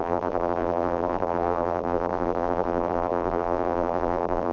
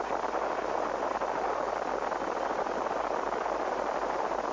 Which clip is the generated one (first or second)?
first